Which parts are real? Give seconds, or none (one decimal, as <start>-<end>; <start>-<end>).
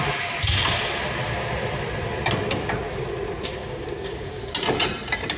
0.0-3.6; 4.4-5.4